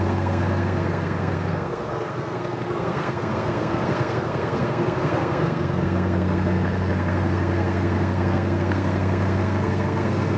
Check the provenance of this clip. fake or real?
fake